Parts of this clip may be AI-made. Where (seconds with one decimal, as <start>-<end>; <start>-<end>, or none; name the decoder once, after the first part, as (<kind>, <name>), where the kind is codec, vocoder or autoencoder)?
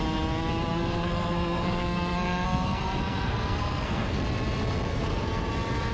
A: 0.7-4.2 (codec, SNAC); 4.9-5.5